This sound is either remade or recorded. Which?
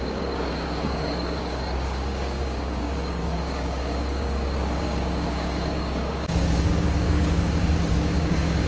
remade